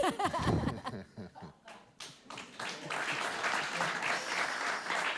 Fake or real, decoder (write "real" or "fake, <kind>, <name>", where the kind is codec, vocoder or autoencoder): real